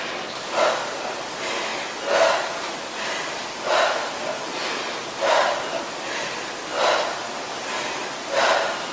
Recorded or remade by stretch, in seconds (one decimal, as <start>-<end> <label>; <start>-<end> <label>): 0.0-7.5 recorded; 7.5-8.5 remade; 8.5-8.9 recorded